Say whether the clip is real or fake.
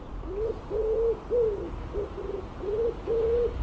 real